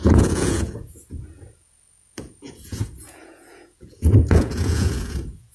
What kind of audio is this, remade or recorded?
remade